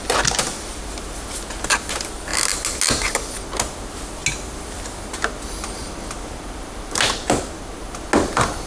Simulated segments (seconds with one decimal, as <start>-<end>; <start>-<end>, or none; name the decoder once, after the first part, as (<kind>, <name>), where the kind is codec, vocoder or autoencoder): none